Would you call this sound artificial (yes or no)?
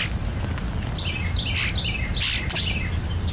no